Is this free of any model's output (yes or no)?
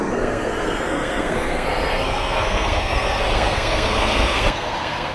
no